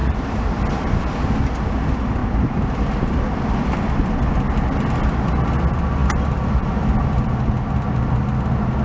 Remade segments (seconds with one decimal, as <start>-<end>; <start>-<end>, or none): 0.0-1.0; 2.2-2.7